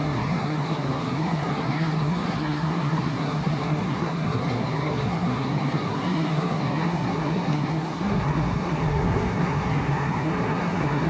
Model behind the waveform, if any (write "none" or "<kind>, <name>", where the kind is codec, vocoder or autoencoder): codec, SNAC